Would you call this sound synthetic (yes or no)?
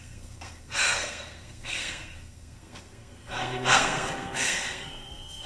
yes